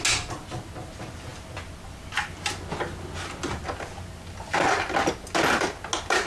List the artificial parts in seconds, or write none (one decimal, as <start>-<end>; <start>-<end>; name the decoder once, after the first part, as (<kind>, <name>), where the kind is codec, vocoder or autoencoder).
none